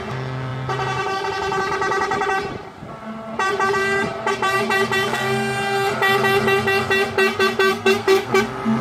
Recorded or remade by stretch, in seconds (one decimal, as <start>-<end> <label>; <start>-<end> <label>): 0.0-7.7 recorded; 7.7-8.3 remade; 8.3-8.8 recorded